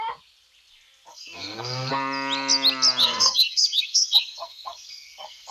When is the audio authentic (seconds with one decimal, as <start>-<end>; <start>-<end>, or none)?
0.0-1.1; 1.9-3.0